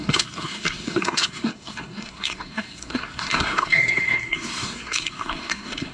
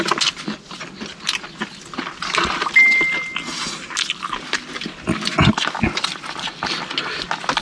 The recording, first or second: second